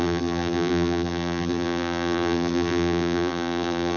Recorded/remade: remade